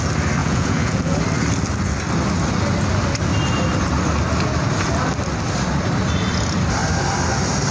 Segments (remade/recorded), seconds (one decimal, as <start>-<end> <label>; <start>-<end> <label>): 0.0-0.4 recorded; 0.4-1.2 remade; 1.2-7.7 recorded